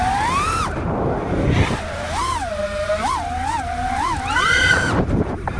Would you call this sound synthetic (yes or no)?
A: yes